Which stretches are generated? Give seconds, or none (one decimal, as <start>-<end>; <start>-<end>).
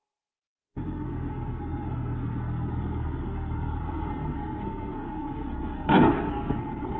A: 0.0-7.0